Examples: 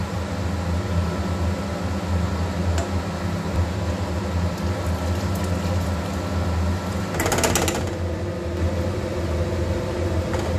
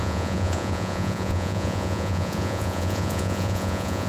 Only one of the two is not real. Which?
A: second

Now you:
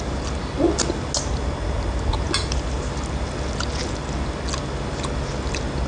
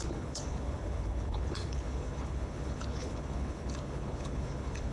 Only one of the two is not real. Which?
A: second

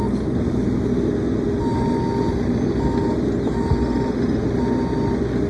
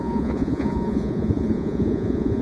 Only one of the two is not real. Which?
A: second